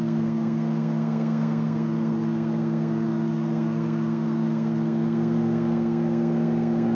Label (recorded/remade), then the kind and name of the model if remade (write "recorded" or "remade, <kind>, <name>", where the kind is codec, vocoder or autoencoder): remade, codec, SNAC